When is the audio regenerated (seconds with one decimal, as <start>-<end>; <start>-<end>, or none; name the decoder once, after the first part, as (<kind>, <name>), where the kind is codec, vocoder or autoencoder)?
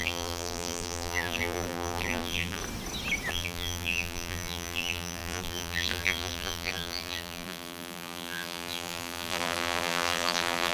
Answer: 0.0-2.6 (vocoder, BigVGAN v2); 3.3-10.7